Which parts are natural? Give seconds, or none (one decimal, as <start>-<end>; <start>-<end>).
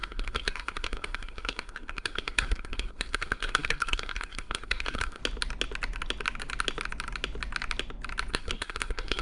5.2-8.3